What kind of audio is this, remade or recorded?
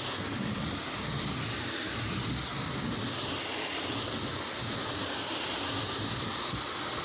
recorded